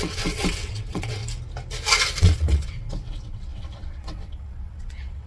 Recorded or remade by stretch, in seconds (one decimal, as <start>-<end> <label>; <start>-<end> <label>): 0.0-1.2 remade; 1.2-2.2 recorded; 2.2-5.3 remade